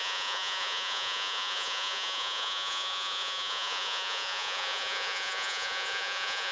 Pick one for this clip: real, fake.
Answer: fake